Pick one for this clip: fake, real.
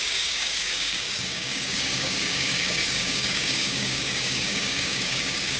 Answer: fake